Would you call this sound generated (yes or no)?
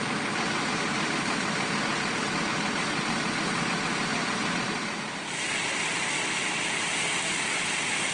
no